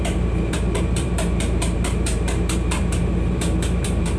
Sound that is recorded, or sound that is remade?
remade